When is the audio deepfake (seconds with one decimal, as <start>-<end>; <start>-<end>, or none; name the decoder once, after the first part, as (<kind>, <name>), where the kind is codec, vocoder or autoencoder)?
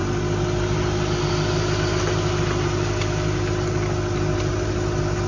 none